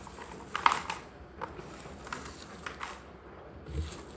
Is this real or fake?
real